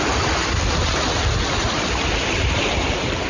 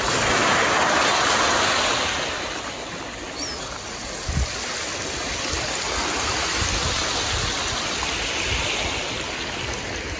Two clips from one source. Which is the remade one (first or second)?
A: first